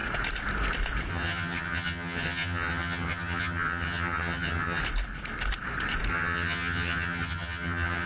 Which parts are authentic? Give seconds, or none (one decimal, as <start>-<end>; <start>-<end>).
0.0-1.1; 4.8-6.1